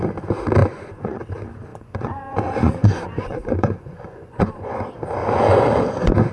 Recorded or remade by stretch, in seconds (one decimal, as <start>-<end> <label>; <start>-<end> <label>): 0.0-0.6 recorded; 0.6-1.2 remade; 1.2-1.7 recorded; 1.7-4.8 remade; 4.8-5.2 recorded; 5.2-6.3 remade